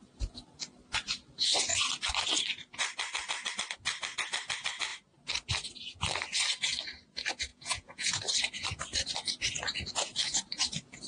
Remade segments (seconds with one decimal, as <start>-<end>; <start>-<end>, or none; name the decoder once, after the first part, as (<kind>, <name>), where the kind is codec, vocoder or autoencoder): 7.5-8.2 (vocoder, Vocos)